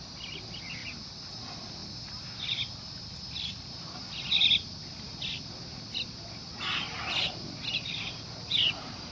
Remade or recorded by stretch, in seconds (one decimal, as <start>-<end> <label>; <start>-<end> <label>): 0.0-0.8 remade; 0.8-1.3 recorded; 1.3-1.8 remade; 1.8-2.7 recorded; 2.7-4.4 remade; 4.4-7.9 recorded; 7.9-9.1 remade